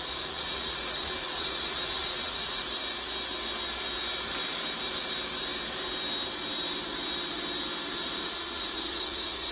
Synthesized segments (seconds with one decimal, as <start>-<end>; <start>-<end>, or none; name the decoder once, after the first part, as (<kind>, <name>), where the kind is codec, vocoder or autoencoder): 0.0-2.8 (vocoder, Vocos); 7.9-9.5